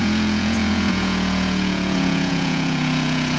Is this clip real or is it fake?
fake